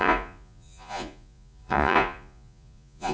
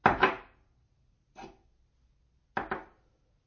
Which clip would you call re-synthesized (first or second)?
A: first